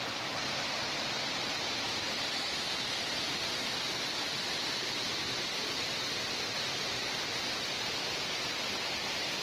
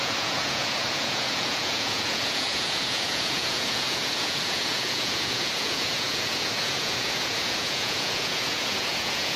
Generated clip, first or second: second